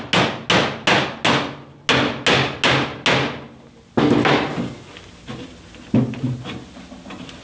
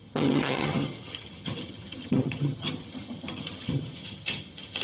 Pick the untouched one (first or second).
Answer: first